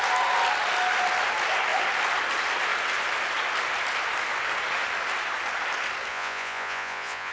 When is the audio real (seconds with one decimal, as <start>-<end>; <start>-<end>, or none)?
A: 0.0-6.1